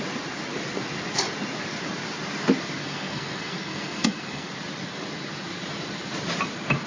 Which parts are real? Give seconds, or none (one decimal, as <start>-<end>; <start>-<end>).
0.0-2.8; 4.5-6.9